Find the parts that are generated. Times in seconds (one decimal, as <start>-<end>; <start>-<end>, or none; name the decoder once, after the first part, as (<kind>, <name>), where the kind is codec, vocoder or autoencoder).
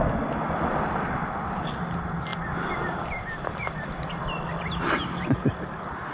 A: none